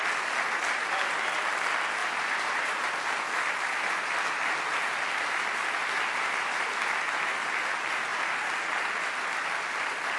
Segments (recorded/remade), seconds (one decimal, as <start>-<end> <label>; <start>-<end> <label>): 0.0-2.0 recorded; 2.0-2.9 remade; 2.9-10.2 recorded